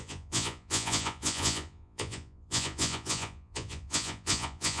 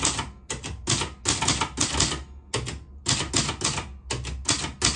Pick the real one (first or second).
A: second